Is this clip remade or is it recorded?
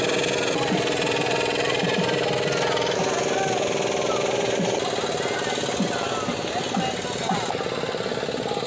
recorded